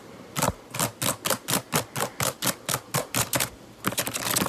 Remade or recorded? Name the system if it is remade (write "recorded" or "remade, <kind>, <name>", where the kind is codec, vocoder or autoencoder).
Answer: recorded